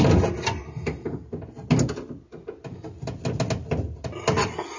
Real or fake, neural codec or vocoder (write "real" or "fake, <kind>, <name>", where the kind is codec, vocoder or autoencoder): real